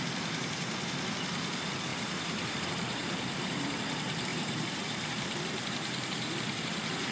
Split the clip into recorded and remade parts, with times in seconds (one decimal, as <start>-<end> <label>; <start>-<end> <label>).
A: 0.0-1.9 recorded; 1.9-2.6 remade; 2.6-3.0 recorded; 3.0-3.8 remade; 3.8-4.3 recorded; 4.3-7.1 remade